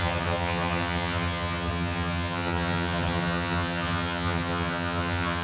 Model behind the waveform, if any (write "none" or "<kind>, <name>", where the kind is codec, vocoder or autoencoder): vocoder, HiFi-GAN